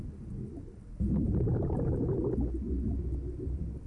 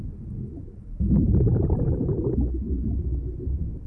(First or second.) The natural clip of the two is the first